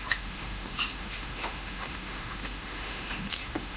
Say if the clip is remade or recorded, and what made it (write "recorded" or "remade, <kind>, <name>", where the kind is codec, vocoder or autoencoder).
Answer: remade, autoencoder, DAC-VAE